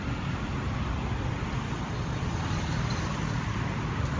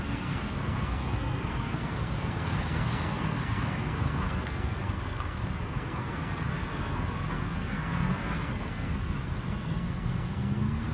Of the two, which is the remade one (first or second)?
second